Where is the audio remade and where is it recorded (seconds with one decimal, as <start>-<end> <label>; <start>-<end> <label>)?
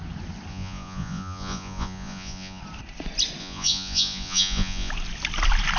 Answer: 0.0-0.5 recorded; 0.5-2.6 remade; 2.6-3.4 recorded; 3.4-4.9 remade; 4.9-5.8 recorded